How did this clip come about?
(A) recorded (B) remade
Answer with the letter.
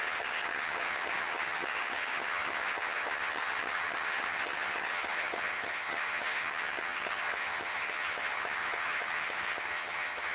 B